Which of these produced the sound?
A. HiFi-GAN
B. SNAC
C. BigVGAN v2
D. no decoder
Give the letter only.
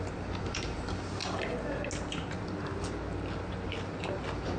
D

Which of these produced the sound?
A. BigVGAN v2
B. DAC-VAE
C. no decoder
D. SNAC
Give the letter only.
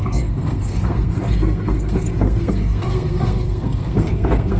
D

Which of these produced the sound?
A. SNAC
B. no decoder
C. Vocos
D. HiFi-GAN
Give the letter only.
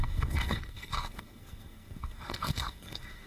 A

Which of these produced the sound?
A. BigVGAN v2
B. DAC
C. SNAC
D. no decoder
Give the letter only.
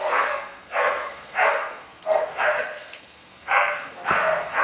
C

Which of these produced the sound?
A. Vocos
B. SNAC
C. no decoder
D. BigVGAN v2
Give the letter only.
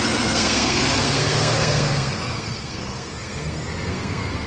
B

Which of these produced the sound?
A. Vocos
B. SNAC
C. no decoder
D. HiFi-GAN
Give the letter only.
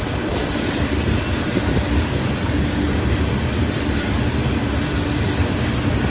C